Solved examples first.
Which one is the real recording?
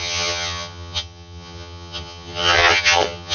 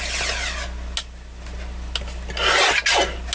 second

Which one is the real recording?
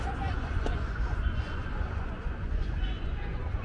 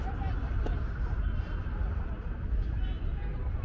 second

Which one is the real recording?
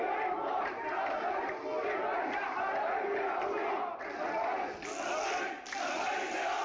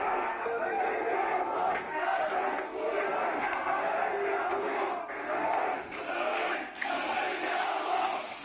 first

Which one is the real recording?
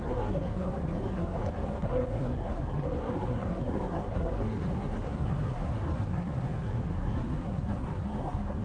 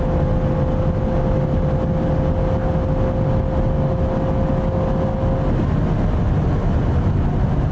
second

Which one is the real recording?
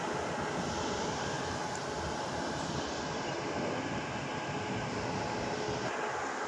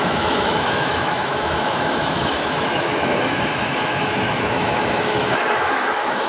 first